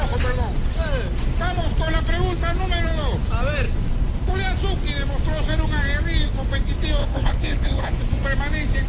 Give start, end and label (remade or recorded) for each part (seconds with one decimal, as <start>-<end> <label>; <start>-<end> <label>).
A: 0.0-7.0 recorded; 7.0-8.0 remade; 8.0-8.9 recorded